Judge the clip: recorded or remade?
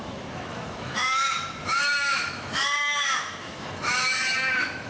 remade